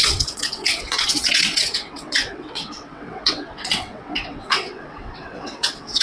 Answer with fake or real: fake